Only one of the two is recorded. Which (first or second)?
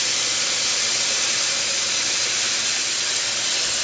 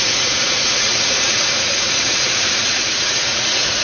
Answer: first